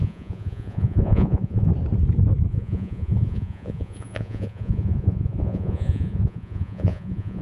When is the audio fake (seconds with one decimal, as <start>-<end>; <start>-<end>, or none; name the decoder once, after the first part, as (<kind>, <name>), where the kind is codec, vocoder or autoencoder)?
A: 0.0-1.7 (vocoder, Vocos); 2.5-7.4